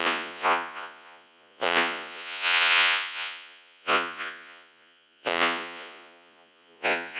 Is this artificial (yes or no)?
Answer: yes